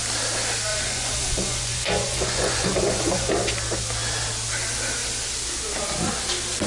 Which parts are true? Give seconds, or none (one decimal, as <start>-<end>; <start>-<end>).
0.0-0.7; 3.3-6.7